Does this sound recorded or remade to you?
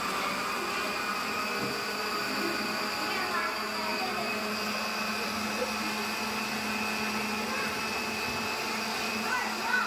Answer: recorded